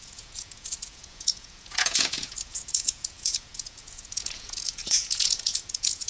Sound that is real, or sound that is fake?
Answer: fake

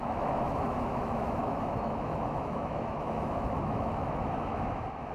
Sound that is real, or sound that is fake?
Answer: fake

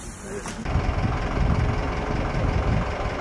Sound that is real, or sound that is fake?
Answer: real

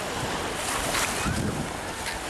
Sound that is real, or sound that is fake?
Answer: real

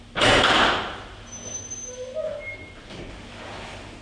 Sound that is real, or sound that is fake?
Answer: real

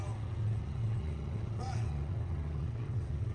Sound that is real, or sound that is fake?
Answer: fake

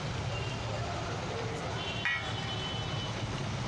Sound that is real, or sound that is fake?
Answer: real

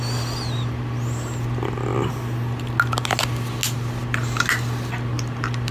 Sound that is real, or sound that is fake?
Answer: real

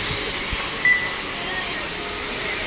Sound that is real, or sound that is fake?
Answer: real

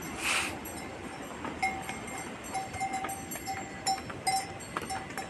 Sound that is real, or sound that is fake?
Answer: real